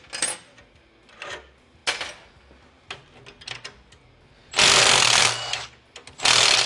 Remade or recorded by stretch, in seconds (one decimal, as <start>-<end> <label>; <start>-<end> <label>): 0.0-6.7 recorded